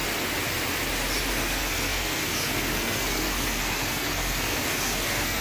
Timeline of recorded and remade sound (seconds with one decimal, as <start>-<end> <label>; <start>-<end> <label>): 0.0-1.3 recorded; 1.3-5.4 remade